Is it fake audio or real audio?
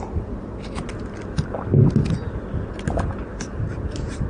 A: real